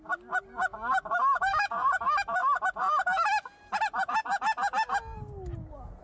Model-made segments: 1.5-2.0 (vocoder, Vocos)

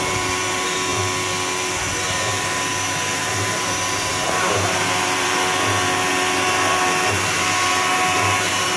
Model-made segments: 0.0-0.9 (vocoder, BigVGAN v2); 2.3-8.8

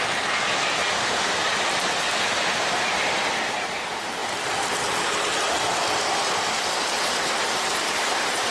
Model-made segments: none

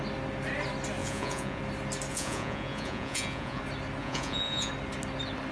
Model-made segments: 1.0-1.6 (vocoder, Vocos); 2.1-3.6; 4.0-4.7

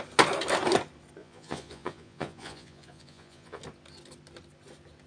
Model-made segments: 1.2-3.6 (vocoder, Vocos)

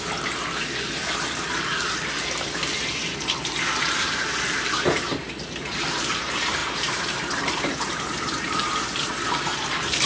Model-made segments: 0.0-10.1 (vocoder, BigVGAN v2)

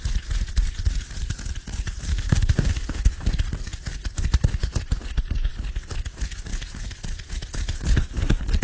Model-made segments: 2.1-3.0 (autoencoder, DAC-VAE)

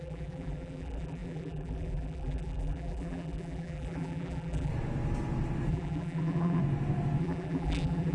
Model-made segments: 0.0-4.7 (vocoder, BigVGAN v2); 5.7-6.6; 7.2-8.1